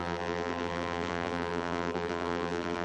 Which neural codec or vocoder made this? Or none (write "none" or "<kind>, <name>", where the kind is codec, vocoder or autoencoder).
vocoder, BigVGAN v2